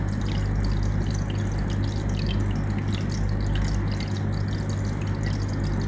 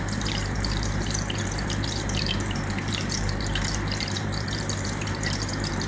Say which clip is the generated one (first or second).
second